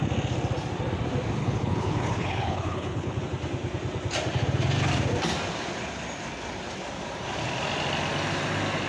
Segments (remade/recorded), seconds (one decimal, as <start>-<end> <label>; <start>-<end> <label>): 0.0-1.4 recorded; 1.4-3.2 remade; 3.2-8.9 recorded